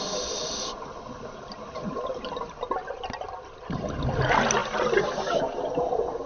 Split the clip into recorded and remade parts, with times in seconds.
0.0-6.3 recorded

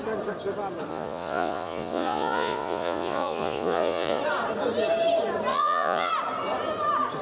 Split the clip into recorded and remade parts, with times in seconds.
0.0-0.9 recorded; 0.9-4.2 remade; 4.2-5.5 recorded; 5.5-6.1 remade; 6.1-7.2 recorded